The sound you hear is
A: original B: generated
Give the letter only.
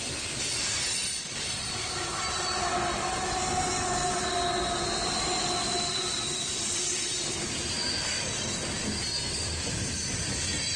A